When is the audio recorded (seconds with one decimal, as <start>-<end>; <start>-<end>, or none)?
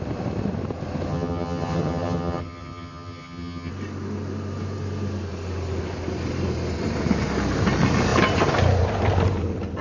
0.0-1.1; 3.7-9.8